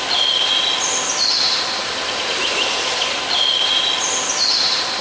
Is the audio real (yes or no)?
yes